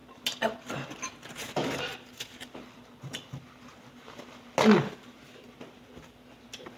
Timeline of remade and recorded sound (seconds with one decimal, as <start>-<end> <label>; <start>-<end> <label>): 0.0-6.8 recorded